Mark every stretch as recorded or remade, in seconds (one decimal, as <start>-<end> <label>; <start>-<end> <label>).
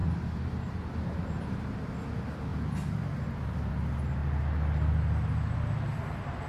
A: 0.0-6.5 recorded